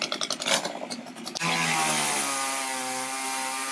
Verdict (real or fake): real